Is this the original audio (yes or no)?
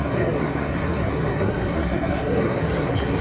no